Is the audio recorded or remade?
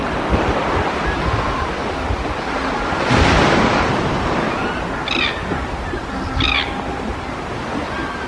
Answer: recorded